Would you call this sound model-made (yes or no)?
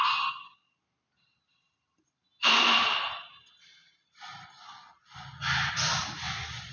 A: yes